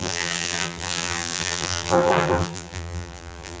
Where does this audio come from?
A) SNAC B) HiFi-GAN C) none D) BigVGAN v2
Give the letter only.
D